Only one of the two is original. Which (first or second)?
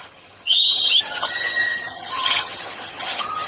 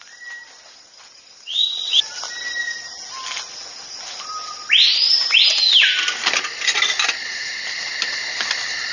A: second